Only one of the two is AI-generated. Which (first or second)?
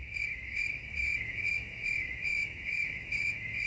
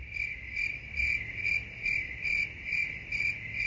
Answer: first